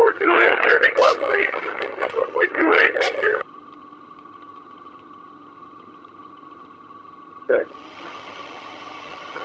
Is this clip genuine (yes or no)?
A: no